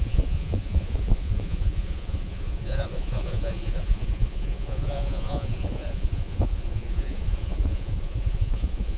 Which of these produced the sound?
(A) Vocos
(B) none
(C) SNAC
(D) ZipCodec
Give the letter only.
A